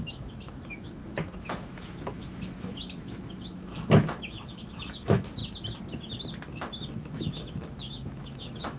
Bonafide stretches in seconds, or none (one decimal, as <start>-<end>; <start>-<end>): 5.4-6.9